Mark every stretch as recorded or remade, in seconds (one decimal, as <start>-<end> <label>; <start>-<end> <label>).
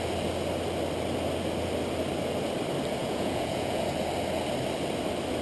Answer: 0.0-3.0 recorded; 3.0-3.8 remade; 3.8-5.4 recorded